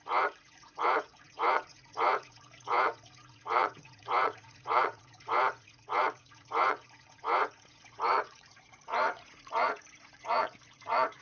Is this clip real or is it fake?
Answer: fake